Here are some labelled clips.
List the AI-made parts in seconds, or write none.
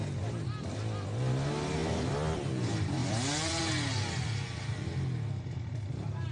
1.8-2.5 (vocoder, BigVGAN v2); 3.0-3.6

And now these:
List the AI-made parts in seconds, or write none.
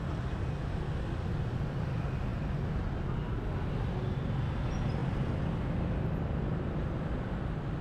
none